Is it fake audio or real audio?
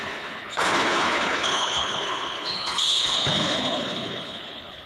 fake